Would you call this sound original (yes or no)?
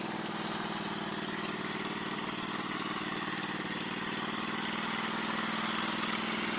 yes